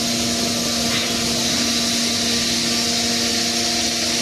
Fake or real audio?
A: real